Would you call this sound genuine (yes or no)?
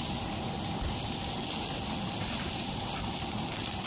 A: yes